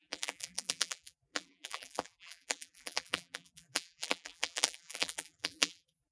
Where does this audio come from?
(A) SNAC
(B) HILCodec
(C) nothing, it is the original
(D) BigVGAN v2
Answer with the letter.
D